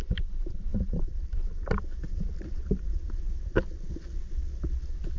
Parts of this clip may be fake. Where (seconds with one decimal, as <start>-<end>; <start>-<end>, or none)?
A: 0.0-3.5; 4.3-5.2